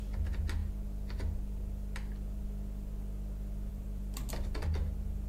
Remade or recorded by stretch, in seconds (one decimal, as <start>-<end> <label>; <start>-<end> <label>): 0.0-3.7 recorded; 3.7-4.3 remade; 4.3-5.3 recorded